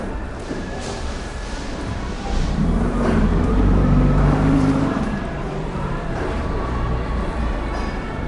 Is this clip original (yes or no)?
no